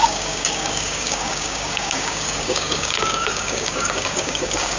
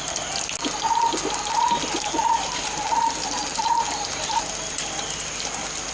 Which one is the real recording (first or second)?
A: second